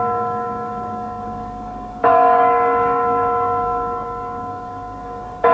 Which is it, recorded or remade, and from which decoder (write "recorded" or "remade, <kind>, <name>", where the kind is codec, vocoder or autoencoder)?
remade, codec, DAC